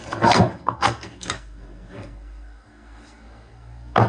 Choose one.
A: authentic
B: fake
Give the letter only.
B